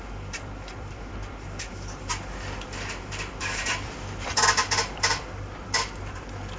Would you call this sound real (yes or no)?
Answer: no